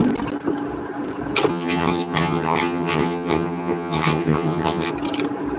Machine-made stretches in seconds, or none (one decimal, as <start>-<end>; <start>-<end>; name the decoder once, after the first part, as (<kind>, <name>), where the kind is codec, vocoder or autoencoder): 1.5-4.9 (vocoder, HiFi-GAN)